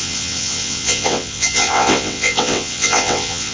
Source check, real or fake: fake